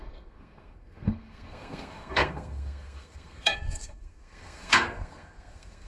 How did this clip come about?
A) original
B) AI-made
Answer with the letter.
B